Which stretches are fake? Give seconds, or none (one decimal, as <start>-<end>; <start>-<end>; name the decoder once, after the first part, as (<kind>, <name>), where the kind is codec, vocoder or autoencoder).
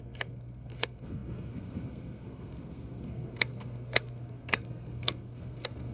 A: 0.0-5.9 (codec, SNAC)